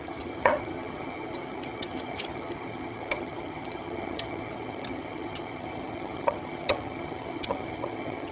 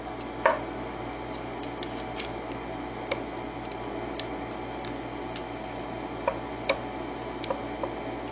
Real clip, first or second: second